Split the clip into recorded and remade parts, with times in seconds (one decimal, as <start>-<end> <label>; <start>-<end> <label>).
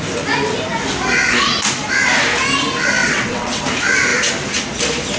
0.0-3.0 recorded; 3.0-3.6 remade; 3.6-5.2 recorded